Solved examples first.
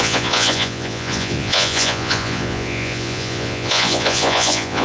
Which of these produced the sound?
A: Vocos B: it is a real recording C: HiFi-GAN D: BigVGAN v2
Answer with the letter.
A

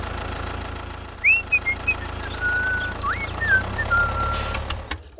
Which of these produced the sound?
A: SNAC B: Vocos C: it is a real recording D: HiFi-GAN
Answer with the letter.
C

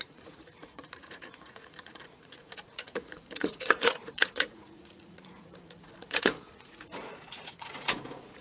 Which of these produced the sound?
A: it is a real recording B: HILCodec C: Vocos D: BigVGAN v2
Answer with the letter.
C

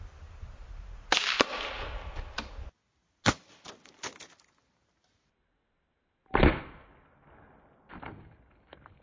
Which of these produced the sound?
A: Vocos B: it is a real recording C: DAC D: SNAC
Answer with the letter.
B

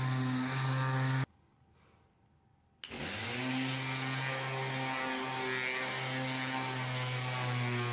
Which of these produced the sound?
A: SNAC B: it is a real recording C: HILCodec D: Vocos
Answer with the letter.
B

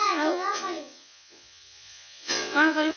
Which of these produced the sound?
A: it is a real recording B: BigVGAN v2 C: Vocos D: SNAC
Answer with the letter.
C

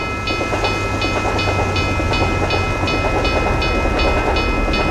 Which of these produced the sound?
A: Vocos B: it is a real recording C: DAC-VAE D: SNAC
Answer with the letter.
B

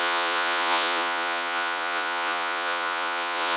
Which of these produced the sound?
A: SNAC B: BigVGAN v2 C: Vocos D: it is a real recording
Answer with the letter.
C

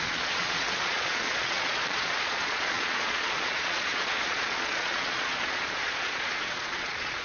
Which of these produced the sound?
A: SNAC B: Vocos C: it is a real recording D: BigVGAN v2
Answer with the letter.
B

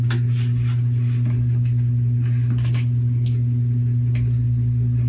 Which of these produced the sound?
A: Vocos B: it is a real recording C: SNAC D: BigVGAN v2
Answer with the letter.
B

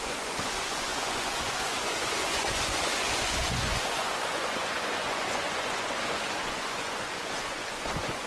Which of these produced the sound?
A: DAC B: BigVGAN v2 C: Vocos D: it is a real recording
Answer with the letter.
C